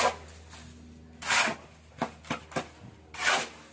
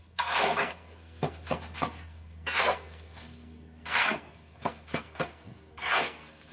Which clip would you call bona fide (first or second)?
first